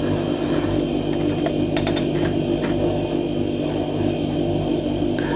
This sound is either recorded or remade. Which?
recorded